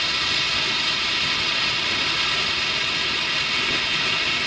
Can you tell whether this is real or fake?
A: real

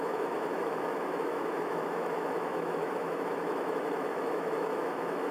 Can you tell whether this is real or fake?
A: fake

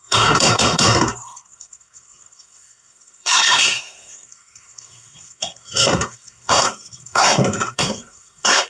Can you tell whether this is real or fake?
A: fake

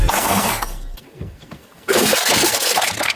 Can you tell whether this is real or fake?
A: fake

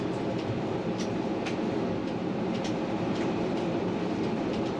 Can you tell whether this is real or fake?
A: fake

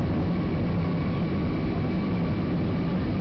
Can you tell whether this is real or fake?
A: real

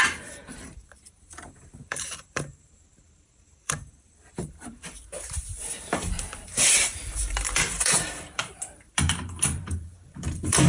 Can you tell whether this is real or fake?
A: fake